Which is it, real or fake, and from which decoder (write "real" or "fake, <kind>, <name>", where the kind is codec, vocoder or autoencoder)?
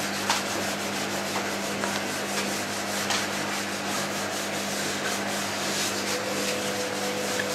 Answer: real